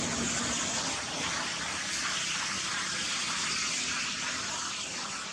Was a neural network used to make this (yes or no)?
no